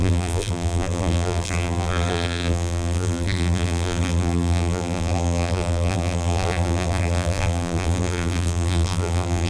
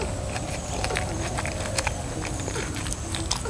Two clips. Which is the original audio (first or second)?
second